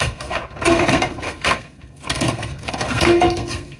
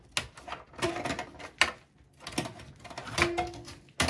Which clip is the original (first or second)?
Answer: second